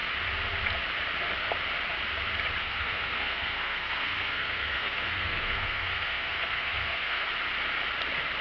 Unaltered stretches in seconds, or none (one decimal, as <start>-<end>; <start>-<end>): 0.0-2.6; 7.3-8.4